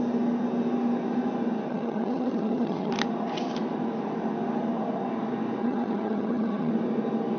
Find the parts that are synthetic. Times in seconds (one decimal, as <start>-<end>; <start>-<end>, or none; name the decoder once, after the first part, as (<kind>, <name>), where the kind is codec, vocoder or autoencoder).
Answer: 1.7-2.9 (vocoder, HiFi-GAN); 5.6-6.7